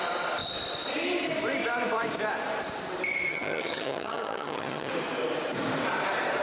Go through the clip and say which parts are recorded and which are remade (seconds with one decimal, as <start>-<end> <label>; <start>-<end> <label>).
0.0-3.3 recorded; 3.3-4.9 remade; 4.9-6.4 recorded